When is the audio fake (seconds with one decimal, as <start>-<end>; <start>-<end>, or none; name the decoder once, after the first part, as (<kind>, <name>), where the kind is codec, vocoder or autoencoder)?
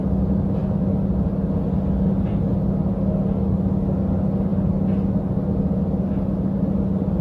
none